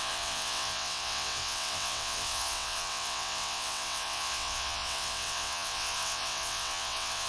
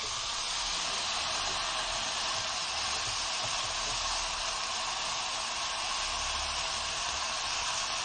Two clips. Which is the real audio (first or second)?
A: second